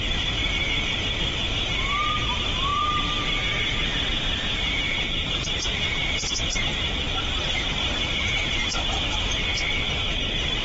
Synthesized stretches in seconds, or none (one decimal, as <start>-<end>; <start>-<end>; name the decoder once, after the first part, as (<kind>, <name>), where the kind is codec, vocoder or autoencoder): 0.0-6.7 (vocoder, BigVGAN v2); 7.4-9.5; 10.1-10.6